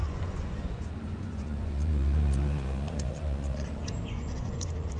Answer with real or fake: fake